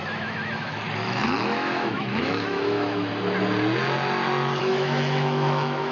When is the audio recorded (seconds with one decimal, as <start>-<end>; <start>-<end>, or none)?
3.1-4.6